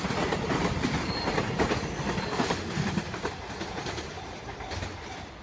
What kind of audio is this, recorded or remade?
recorded